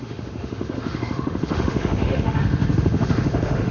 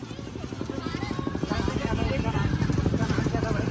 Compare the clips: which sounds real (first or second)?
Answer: second